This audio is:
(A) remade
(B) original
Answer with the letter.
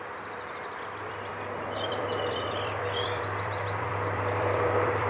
A